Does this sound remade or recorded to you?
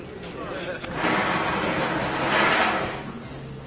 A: recorded